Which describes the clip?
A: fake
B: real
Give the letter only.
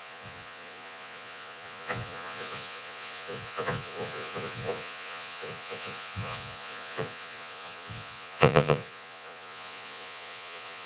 A